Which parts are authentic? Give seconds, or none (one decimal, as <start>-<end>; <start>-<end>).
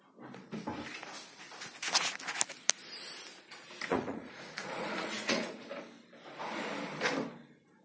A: 0.0-3.9; 5.7-7.8